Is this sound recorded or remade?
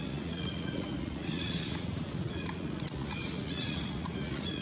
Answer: remade